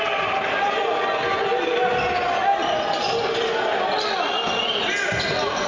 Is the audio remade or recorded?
recorded